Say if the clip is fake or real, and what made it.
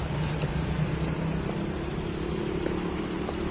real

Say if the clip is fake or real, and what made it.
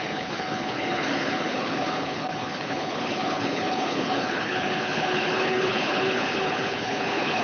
fake, codec, HILCodec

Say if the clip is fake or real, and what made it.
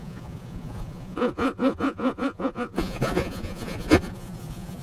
fake, vocoder, Vocos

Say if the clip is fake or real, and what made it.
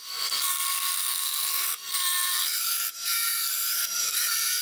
fake, codec, SNAC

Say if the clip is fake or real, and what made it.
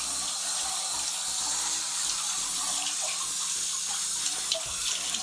real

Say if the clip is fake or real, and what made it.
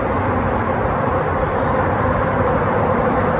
fake, vocoder, BigVGAN v2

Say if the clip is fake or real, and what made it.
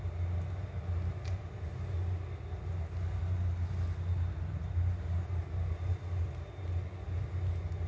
real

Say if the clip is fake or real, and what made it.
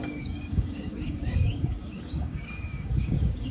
fake, codec, DAC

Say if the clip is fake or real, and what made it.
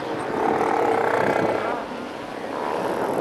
real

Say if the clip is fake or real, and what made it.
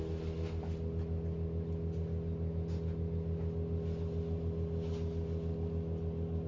real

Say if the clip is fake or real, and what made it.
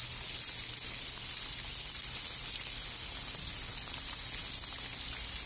real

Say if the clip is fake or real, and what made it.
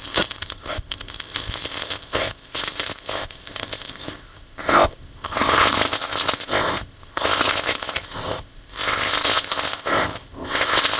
fake, codec, ZipCodec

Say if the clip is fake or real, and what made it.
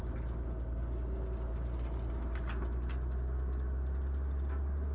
real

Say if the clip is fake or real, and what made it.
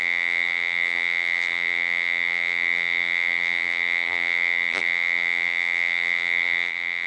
fake, vocoder, BigVGAN v2